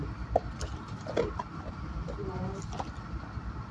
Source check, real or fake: real